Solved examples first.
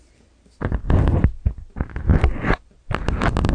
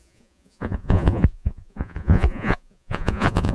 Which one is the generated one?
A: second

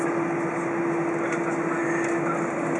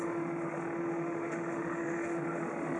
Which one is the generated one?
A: second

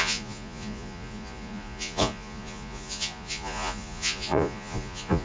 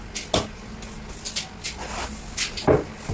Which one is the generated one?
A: first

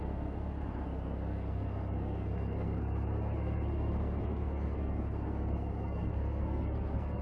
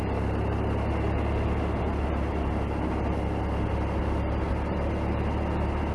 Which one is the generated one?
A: first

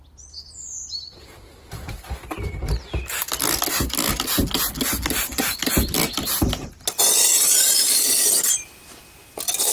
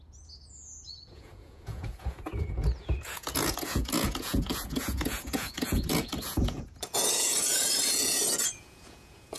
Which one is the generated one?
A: second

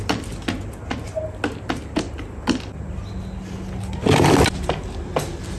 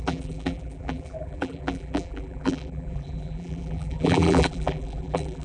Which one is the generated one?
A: second